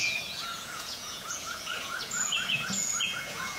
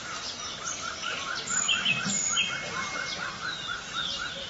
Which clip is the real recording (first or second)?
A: second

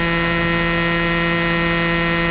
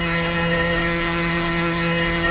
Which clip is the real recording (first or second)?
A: first